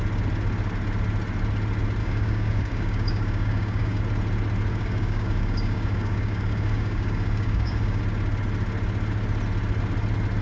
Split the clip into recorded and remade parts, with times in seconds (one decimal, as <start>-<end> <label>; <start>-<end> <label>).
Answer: 0.0-2.0 recorded; 2.0-4.0 remade; 4.0-4.7 recorded; 4.7-8.0 remade; 8.0-10.4 recorded